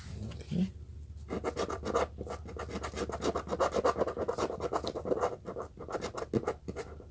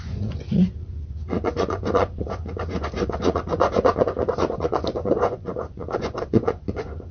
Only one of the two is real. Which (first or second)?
first